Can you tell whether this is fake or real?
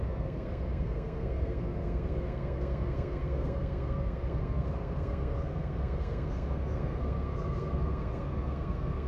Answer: fake